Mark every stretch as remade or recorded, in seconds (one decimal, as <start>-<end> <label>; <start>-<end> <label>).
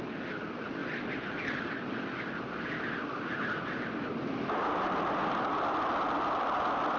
0.0-7.0 recorded